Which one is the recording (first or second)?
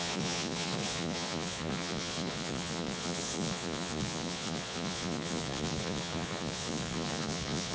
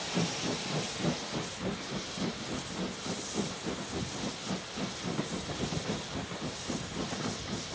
second